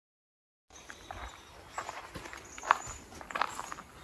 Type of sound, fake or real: real